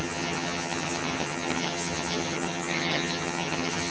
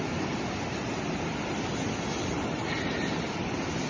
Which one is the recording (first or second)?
second